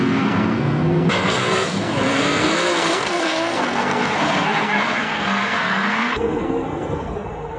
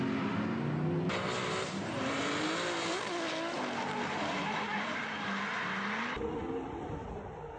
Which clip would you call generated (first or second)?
first